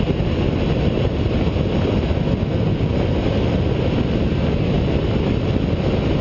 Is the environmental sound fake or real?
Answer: real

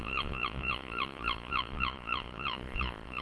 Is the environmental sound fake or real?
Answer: fake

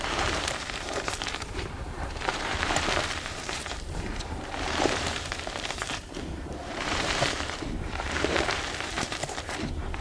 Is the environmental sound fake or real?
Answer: fake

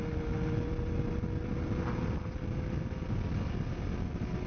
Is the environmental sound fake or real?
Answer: real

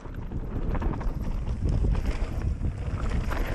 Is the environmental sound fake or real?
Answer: real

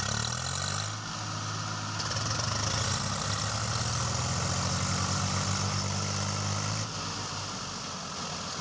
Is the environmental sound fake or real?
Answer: real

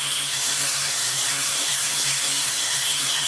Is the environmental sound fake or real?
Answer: fake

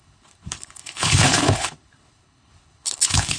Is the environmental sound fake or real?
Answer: fake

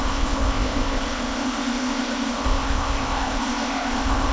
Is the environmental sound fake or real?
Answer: fake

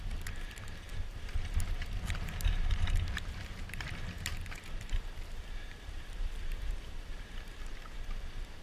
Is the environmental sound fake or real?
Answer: fake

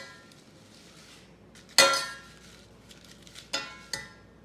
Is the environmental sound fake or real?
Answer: real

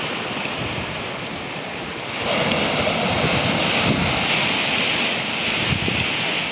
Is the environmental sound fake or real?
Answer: real